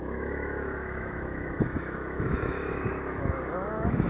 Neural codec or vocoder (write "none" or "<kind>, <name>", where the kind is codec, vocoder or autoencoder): autoencoder, DAC-VAE